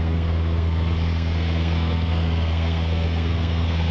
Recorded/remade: remade